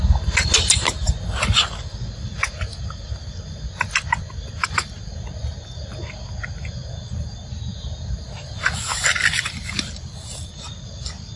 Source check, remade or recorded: recorded